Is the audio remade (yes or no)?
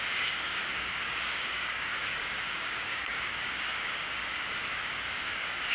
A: yes